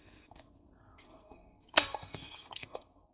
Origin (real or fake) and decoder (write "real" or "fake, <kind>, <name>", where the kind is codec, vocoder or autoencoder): fake, codec, SNAC